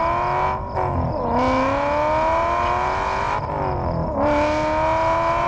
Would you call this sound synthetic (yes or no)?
no